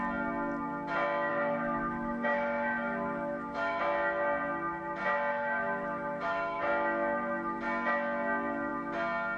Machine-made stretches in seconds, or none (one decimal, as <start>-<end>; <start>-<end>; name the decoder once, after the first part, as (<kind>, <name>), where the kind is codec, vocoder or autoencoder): 1.3-3.8 (autoencoder, DAC-VAE); 5.3-6.6